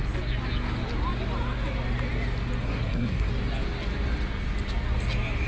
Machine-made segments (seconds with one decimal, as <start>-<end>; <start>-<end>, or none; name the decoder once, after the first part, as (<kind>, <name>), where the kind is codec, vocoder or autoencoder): 2.6-3.3 (codec, SNAC)